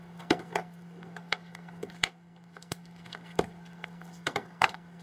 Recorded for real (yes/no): no